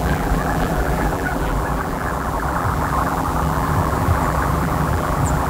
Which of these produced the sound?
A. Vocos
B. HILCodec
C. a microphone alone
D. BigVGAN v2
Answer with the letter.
D